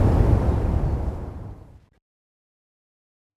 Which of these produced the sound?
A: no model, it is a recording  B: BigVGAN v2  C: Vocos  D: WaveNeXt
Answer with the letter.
B